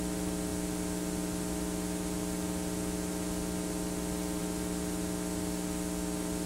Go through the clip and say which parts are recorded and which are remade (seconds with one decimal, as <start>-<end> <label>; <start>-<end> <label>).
0.0-6.5 recorded